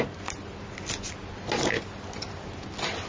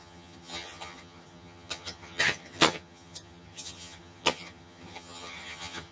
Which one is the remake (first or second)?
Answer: second